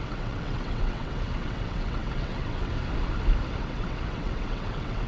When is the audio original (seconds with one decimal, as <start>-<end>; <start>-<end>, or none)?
2.7-3.6